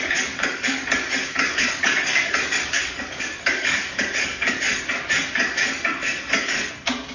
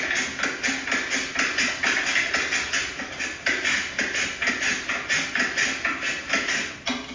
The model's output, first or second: first